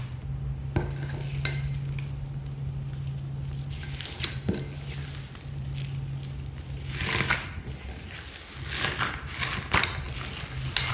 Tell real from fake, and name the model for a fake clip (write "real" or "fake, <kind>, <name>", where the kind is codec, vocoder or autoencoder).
real